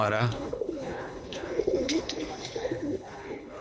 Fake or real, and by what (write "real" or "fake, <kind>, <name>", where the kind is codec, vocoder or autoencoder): fake, codec, HILCodec